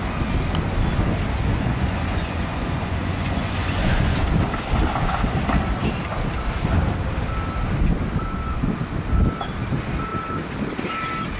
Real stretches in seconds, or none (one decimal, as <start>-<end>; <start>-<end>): 0.0-1.5; 4.2-11.4